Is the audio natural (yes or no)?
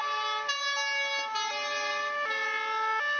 yes